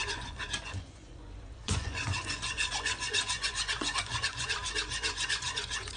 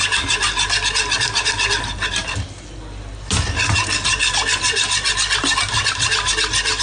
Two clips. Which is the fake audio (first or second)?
first